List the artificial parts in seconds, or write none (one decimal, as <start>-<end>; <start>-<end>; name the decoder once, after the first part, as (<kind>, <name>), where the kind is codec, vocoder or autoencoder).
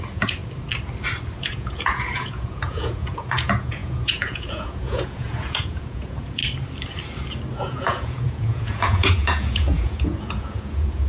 0.0-0.4 (vocoder, Vocos); 1.4-6.4; 7.5-11.1